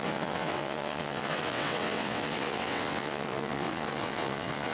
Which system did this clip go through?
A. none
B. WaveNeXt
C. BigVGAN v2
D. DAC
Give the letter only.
B